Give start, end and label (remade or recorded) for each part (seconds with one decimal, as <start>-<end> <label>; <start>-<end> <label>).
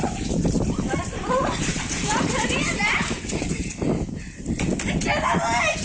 0.0-3.7 remade; 3.7-5.8 recorded